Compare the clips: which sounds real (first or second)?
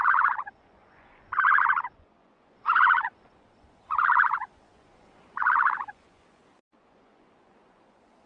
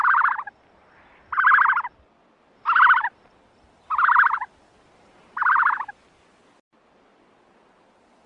second